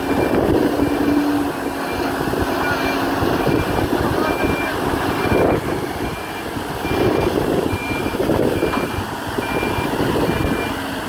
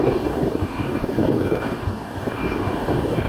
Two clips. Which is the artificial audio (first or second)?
second